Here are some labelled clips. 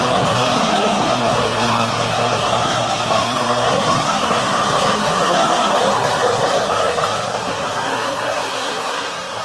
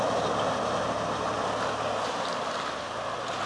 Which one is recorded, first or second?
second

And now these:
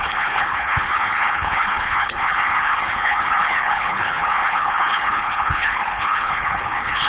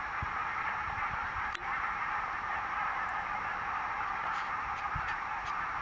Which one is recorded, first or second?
second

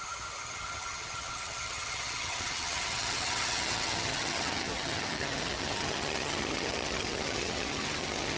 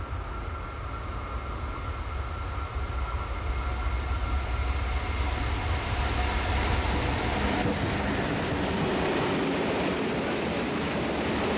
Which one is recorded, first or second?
second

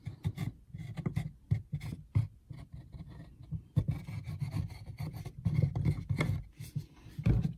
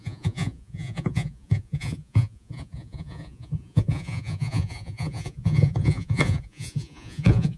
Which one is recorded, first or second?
first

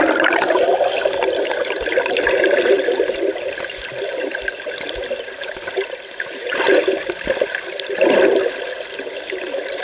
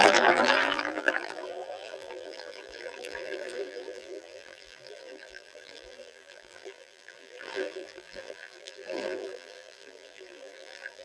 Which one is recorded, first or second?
first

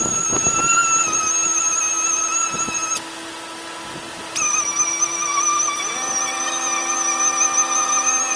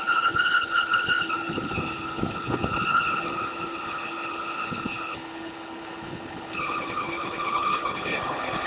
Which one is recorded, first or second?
first